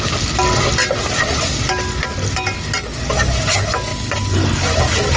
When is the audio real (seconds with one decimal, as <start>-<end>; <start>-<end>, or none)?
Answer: 0.0-5.2